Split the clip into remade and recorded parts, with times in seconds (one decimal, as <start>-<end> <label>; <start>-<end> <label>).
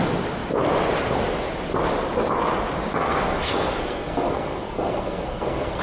0.0-2.9 recorded; 2.9-5.8 remade